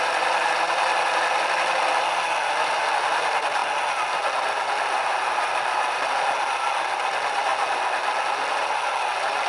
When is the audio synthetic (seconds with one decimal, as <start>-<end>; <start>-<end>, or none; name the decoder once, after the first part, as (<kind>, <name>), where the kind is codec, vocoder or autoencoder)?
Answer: none